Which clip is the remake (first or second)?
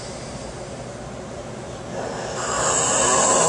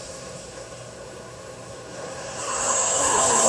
second